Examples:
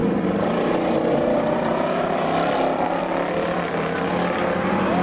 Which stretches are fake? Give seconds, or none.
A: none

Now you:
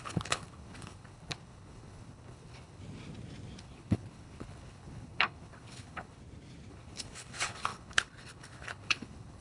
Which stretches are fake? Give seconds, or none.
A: 0.0-2.8; 3.6-6.2; 6.7-9.4

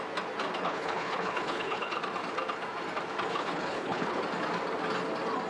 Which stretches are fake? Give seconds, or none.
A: 0.6-2.0; 3.3-4.2

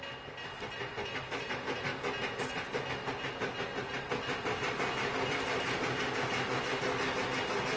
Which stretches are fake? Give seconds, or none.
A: none

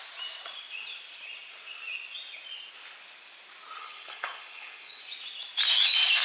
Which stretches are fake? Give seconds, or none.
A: 3.8-5.0